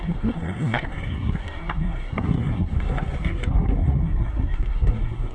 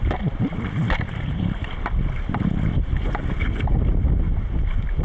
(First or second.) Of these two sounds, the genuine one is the second